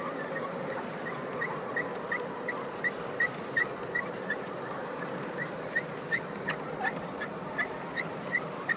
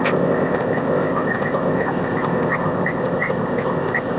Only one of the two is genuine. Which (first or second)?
first